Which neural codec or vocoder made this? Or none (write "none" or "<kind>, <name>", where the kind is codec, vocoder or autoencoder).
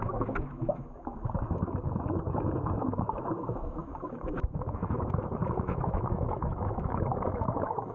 autoencoder, DAC-VAE